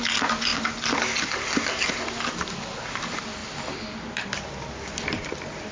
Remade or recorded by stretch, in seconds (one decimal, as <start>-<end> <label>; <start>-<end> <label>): 0.0-5.7 recorded